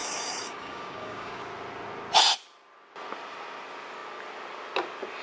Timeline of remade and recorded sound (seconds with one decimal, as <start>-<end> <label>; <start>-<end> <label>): 0.0-1.4 remade; 1.4-5.2 recorded